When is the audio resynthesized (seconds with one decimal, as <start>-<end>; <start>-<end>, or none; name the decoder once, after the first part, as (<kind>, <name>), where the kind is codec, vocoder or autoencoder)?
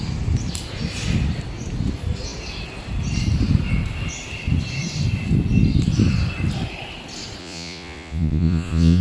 7.4-9.0 (vocoder, Vocos)